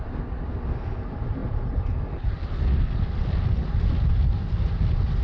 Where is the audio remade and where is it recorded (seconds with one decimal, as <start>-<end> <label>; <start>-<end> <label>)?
0.0-5.2 recorded